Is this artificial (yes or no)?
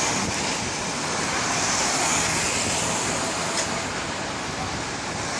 no